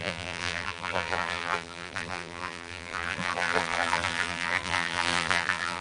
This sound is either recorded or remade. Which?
remade